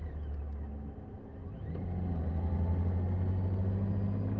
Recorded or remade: recorded